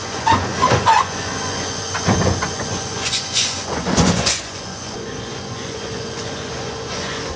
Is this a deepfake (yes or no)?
yes